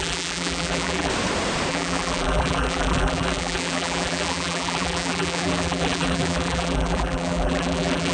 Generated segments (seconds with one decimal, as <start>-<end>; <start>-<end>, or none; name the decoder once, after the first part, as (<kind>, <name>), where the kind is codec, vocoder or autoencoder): 0.0-1.1 (vocoder, BigVGAN v2); 1.7-8.1